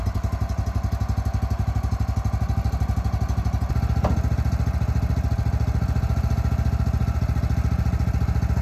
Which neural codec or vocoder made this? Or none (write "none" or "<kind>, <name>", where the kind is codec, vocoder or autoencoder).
none